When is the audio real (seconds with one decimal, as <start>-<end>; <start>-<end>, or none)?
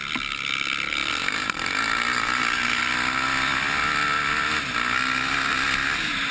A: 0.0-1.2; 2.8-6.3